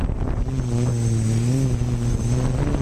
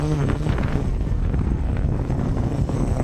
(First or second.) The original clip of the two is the first